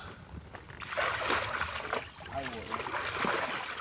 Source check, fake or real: real